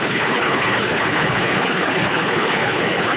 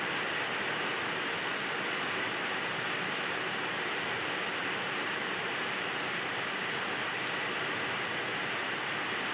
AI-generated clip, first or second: first